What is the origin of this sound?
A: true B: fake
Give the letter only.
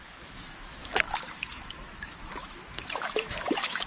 B